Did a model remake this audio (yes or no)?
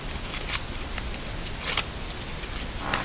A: no